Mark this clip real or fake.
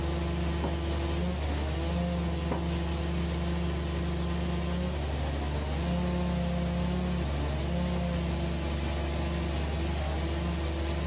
real